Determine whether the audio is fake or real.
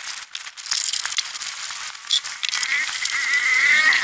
real